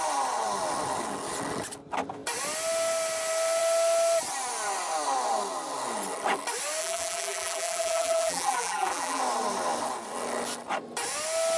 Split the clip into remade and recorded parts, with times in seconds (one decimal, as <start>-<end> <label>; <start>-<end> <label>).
0.0-6.8 recorded; 6.8-9.2 remade; 9.2-11.6 recorded